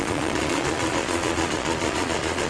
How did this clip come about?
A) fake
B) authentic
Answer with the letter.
A